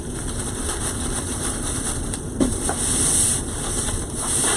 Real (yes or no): no